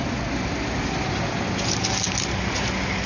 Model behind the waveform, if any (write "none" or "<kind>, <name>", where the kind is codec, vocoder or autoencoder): none